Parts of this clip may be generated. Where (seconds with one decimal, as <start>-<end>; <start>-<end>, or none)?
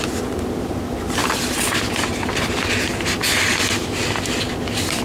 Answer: 1.2-4.2